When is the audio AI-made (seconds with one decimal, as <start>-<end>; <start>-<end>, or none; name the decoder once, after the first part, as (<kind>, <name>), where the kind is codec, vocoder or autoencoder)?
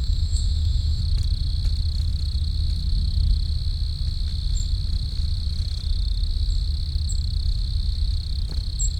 0.0-1.0 (autoencoder, DAC-VAE)